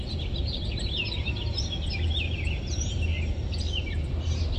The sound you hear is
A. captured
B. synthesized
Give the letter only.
A